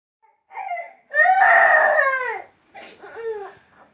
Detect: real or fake real